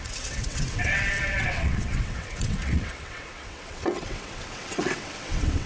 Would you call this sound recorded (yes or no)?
no